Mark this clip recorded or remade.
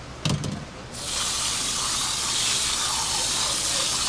recorded